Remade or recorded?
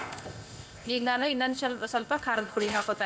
remade